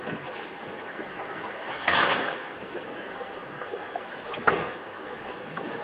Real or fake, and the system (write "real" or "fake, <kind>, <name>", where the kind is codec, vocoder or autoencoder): fake, codec, SNAC